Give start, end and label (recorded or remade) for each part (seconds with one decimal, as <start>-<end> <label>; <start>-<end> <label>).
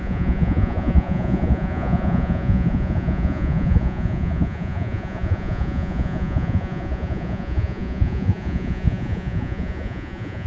0.0-10.5 remade